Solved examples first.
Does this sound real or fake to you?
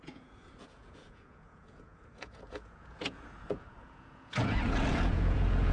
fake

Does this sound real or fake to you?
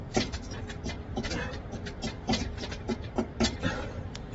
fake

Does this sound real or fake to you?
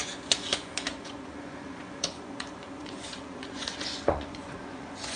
fake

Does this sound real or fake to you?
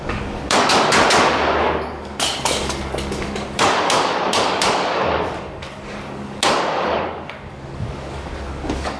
fake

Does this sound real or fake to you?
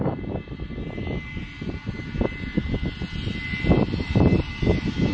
real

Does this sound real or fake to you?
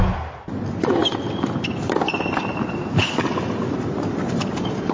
real